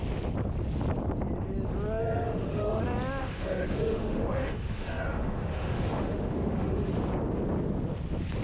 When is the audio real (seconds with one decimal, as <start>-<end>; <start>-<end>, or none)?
0.0-2.0; 2.8-3.2; 6.9-8.4